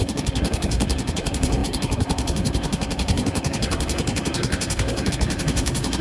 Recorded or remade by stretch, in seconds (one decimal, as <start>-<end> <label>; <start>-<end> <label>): 0.0-6.0 remade